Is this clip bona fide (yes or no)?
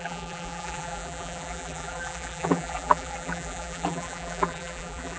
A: no